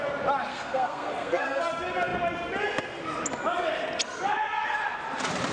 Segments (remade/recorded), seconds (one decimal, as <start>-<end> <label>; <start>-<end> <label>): 0.0-0.5 recorded; 0.5-1.6 remade; 1.6-5.5 recorded

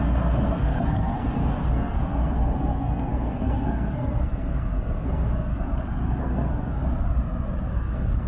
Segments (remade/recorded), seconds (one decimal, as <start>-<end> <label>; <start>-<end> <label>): 0.0-5.5 remade; 5.5-6.2 recorded; 6.2-6.8 remade; 6.8-7.7 recorded; 7.7-8.3 remade

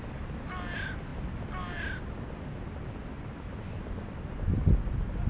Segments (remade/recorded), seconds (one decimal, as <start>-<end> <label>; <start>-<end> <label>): 0.0-5.3 recorded

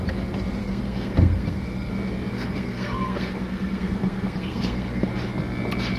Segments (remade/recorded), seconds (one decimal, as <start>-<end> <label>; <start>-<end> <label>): 0.0-0.6 recorded; 0.6-1.9 remade; 1.9-2.3 recorded; 2.3-5.1 remade; 5.1-6.0 recorded

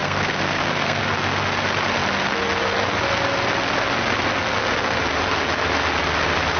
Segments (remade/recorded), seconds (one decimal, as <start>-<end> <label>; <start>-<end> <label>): 0.0-1.0 remade; 1.0-6.6 recorded

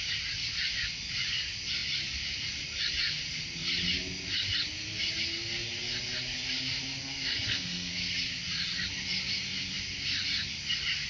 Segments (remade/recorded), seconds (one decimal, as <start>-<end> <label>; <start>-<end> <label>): 0.0-7.0 recorded; 7.0-7.9 remade; 7.9-11.1 recorded

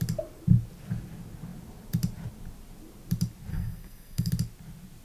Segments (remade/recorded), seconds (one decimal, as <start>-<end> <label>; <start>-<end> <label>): 0.0-3.5 recorded; 3.5-4.3 remade; 4.3-5.0 recorded

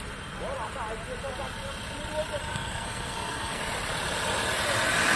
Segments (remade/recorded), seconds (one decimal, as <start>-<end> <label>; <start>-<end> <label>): 0.0-2.4 recorded; 2.4-3.6 remade; 3.6-5.2 recorded